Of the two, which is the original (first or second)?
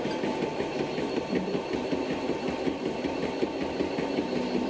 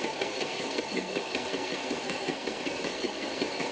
first